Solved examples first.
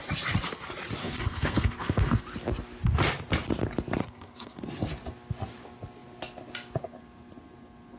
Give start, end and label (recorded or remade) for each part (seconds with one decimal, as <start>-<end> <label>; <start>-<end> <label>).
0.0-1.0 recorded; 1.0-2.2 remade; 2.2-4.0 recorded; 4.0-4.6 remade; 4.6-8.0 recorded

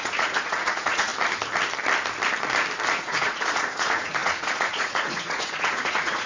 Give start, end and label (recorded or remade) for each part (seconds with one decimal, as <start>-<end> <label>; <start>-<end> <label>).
0.0-1.1 remade; 1.1-2.9 recorded; 2.9-6.3 remade

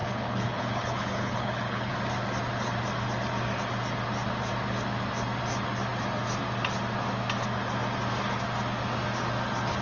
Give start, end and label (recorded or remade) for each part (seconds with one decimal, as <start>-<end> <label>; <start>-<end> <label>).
0.0-1.9 remade; 1.9-9.8 recorded